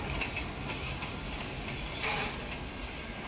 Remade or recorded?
recorded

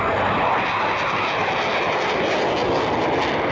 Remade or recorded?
recorded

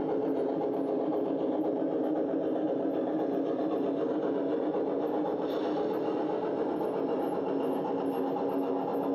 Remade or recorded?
recorded